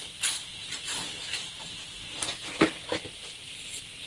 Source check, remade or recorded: recorded